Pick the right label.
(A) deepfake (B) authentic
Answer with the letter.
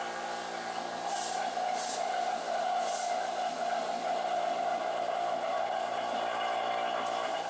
B